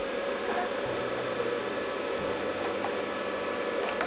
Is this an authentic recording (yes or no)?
yes